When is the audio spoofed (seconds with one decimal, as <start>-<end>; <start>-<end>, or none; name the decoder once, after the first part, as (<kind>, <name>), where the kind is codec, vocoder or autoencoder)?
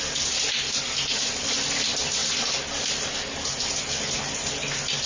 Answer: none